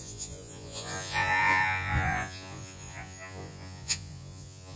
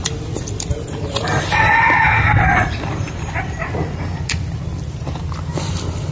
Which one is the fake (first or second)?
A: first